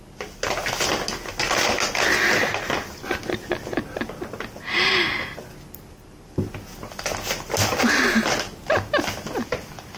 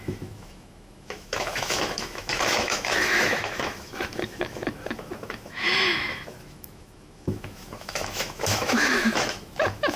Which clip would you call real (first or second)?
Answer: first